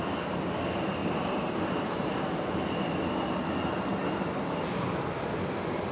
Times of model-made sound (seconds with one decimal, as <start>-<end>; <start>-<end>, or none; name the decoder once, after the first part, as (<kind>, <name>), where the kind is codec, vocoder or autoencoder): 1.0-2.1 (vocoder, BigVGAN v2)